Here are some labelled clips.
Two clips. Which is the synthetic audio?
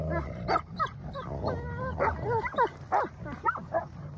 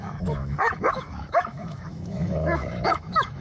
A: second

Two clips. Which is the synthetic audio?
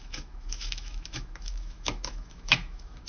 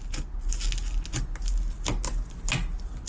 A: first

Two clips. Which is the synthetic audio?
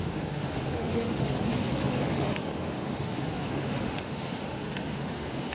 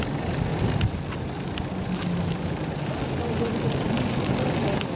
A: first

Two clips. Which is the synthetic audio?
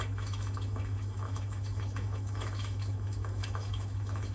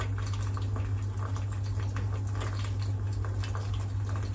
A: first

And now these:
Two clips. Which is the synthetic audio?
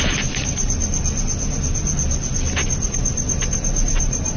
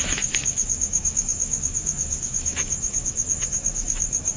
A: second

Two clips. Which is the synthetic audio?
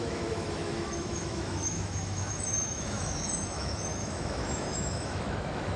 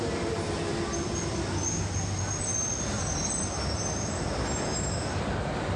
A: first